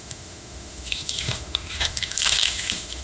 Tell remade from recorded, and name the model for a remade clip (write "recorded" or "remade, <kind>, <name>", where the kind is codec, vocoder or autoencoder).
remade, autoencoder, DAC-VAE